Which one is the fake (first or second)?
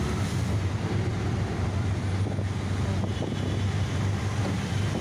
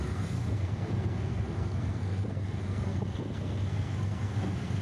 second